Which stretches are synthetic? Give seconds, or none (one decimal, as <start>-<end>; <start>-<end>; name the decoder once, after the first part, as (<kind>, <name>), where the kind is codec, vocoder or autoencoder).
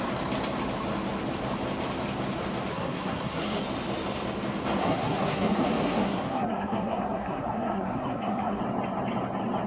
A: 2.7-3.6 (codec, SNAC); 4.8-8.6